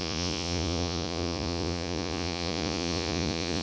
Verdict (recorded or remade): remade